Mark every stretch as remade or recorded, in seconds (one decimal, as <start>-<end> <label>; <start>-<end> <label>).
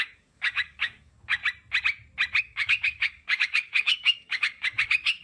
0.0-1.4 remade; 1.4-2.4 recorded; 2.4-5.2 remade